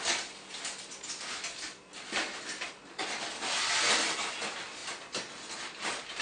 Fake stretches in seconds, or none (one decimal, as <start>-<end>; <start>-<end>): none